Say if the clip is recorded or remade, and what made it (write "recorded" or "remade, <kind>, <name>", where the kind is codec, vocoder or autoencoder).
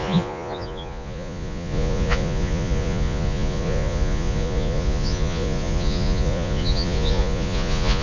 remade, vocoder, Vocos